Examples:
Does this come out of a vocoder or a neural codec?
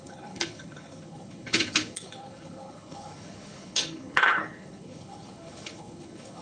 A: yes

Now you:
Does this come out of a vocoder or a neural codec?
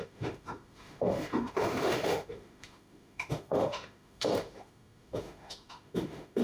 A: yes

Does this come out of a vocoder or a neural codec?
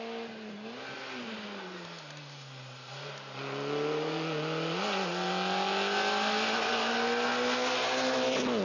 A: no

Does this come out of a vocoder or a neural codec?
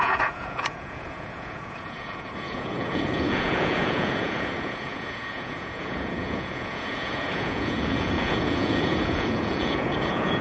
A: yes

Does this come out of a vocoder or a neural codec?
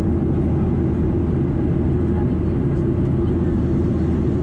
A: no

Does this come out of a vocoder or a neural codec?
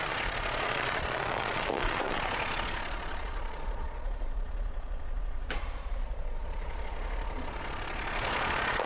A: yes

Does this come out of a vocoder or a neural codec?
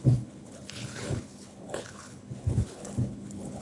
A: yes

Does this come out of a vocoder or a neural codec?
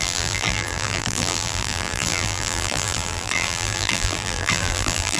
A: yes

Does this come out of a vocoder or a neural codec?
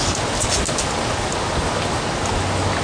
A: no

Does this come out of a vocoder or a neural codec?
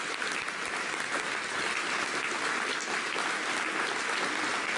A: no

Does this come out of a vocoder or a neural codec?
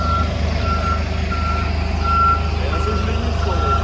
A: no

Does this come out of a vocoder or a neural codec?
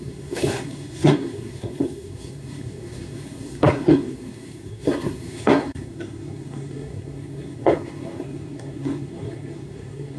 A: yes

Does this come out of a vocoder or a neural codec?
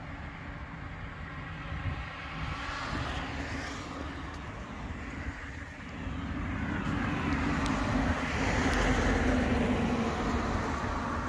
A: no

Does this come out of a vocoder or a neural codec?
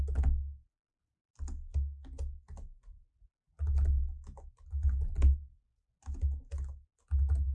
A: no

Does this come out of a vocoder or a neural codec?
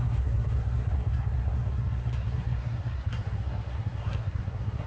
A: yes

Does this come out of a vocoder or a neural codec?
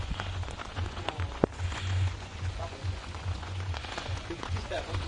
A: yes